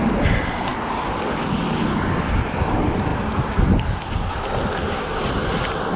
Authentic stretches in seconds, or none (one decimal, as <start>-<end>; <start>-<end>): 0.7-1.8; 3.1-4.3